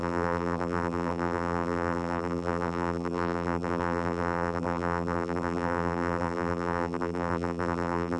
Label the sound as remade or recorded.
remade